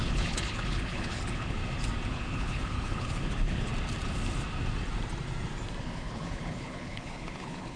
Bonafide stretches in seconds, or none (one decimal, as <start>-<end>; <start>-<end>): 1.6-2.1; 3.7-5.8